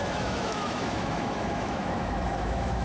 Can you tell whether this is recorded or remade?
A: remade